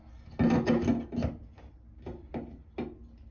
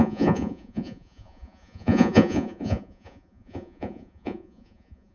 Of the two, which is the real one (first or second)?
first